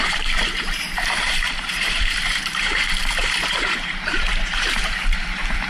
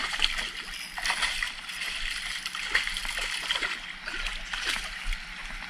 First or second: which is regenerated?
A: first